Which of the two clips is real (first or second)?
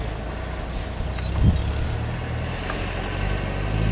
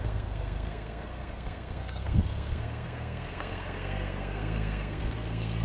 first